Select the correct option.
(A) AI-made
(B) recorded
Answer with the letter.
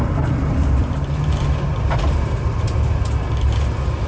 B